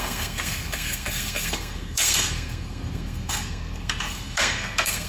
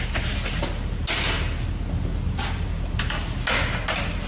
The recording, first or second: second